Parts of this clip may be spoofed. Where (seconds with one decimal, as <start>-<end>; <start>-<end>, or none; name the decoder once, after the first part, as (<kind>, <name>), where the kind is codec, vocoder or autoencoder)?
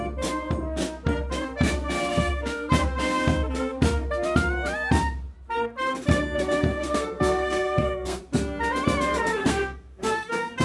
2.1-2.7 (codec, SNAC); 6.7-8.2; 9.4-10.6